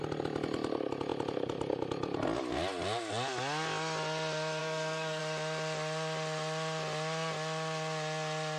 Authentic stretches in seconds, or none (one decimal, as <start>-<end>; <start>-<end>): 0.0-4.6; 5.2-8.6